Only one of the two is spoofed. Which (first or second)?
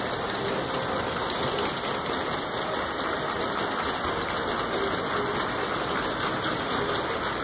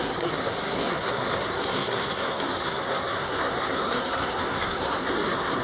second